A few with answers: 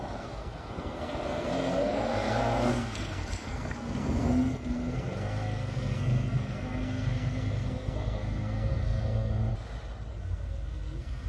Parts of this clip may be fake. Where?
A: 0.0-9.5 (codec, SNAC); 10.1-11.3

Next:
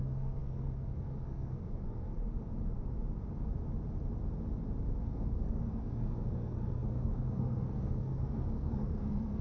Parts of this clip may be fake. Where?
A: 0.0-2.1 (codec, SNAC); 5.0-9.4

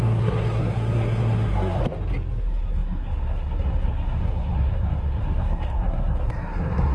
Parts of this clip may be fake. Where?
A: 0.0-1.8 (codec, SNAC); 2.4-6.9

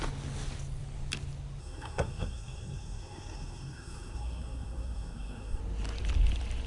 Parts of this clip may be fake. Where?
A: 1.6-5.6 (codec, SNAC)

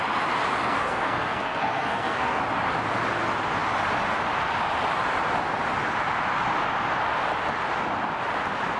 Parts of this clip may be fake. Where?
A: 0.6-2.4 (codec, SNAC)

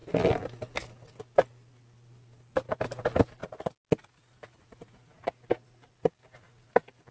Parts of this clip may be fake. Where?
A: none

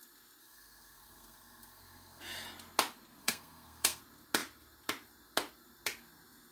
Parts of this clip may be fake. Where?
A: 0.4-2.2 (codec, SNAC); 3.2-4.0